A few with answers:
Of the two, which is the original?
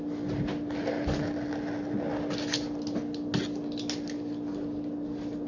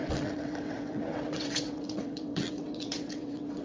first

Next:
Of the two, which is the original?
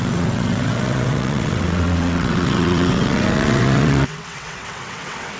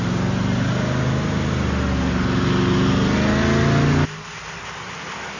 second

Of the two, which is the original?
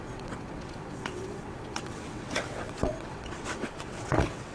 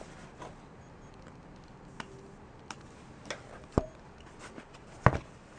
second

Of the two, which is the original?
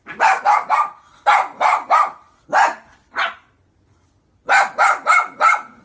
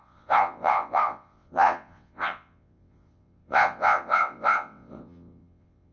first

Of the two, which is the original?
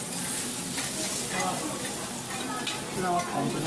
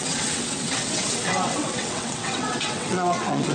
first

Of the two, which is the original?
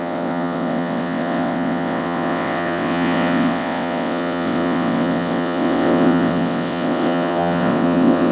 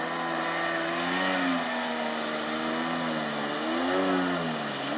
second